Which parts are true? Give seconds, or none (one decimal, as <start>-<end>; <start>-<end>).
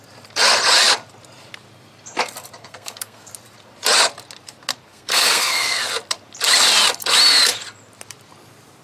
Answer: 0.0-2.6; 3.3-4.9; 5.8-8.8